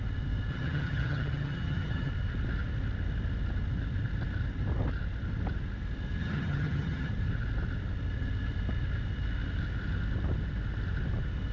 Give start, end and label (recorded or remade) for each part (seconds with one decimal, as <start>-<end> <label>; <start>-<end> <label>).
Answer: 0.0-0.5 recorded; 0.5-2.1 remade; 2.1-6.2 recorded; 6.2-7.1 remade; 7.1-11.5 recorded